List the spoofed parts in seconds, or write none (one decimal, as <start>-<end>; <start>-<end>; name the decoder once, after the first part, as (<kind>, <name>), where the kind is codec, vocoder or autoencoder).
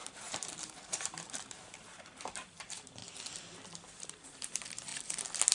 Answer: 0.0-3.0 (vocoder, BigVGAN v2); 4.0-4.9